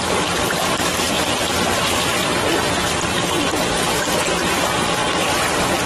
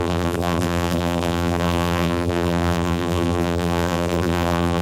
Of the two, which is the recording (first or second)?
first